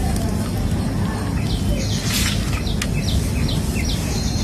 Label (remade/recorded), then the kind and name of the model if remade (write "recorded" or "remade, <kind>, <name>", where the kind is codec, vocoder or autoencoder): recorded